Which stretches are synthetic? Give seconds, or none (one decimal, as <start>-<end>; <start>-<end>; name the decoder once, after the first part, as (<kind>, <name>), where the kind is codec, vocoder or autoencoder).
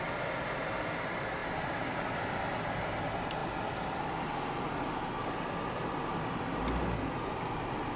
none